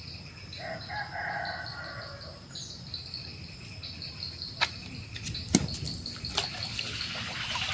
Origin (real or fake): real